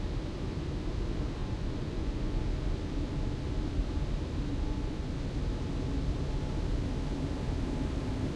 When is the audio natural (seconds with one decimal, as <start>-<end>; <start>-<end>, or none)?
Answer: 0.0-1.4; 2.4-4.5; 5.1-8.4